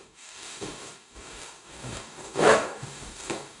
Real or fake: fake